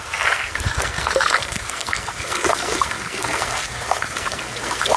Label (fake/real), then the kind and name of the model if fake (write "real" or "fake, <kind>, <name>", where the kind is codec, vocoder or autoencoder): fake, codec, SNAC